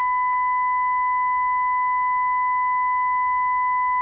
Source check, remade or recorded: recorded